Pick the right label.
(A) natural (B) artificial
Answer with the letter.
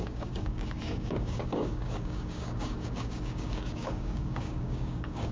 B